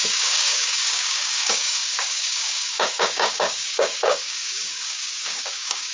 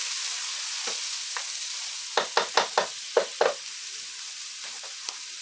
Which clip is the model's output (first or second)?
first